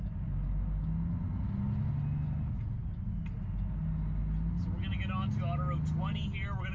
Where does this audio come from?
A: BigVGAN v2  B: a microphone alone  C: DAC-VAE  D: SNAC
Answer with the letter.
B